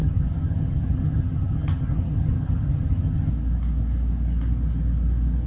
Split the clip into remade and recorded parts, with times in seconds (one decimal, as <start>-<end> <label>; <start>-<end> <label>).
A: 0.0-3.3 remade; 3.3-5.5 recorded